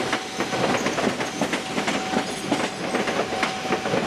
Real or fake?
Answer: real